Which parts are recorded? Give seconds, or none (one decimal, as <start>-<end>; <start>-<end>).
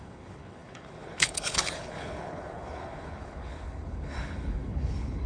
none